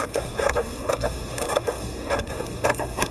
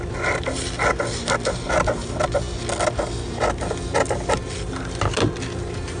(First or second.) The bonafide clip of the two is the second